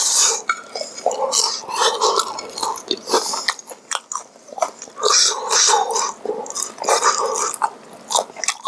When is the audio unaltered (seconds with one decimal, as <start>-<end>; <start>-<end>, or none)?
0.0-8.7